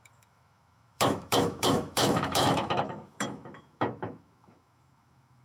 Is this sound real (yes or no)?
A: no